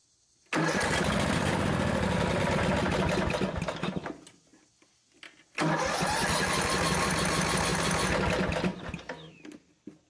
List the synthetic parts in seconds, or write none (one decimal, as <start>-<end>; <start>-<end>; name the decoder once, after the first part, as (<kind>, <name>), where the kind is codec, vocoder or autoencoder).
none